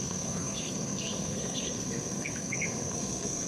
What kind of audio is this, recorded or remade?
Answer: remade